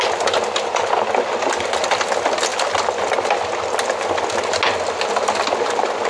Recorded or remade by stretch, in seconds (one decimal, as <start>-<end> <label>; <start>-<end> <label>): 0.0-6.1 recorded